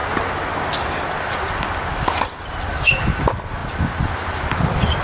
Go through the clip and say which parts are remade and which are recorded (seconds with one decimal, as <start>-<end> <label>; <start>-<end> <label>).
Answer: 0.0-3.0 remade; 3.0-3.6 recorded; 3.6-4.5 remade; 4.5-5.0 recorded